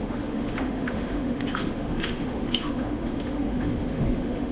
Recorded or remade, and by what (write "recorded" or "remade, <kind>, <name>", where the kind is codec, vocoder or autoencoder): remade, autoencoder, DAC-VAE